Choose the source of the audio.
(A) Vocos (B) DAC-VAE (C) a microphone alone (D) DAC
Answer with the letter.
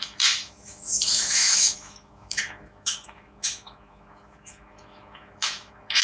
B